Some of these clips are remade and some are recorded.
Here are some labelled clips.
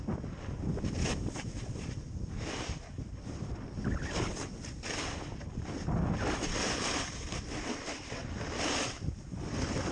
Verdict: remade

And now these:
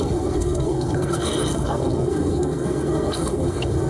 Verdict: remade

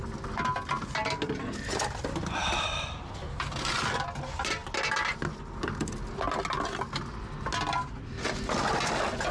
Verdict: recorded